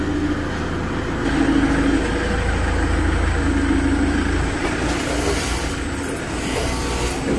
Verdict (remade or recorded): recorded